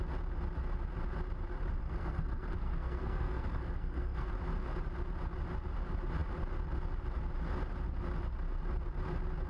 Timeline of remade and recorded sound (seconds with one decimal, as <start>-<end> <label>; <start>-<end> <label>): 0.0-1.8 recorded; 1.8-4.3 remade; 4.3-9.5 recorded